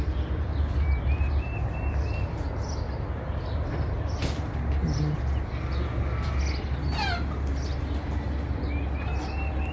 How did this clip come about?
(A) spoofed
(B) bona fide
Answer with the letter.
B